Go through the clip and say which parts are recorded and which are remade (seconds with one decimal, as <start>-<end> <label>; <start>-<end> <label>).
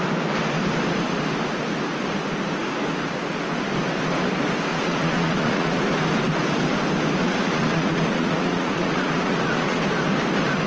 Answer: 0.0-4.7 recorded; 4.7-5.8 remade; 5.8-7.2 recorded; 7.2-9.8 remade; 9.8-10.7 recorded